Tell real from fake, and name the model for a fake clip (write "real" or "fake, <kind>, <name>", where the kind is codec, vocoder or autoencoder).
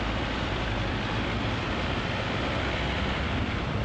fake, vocoder, BigVGAN v2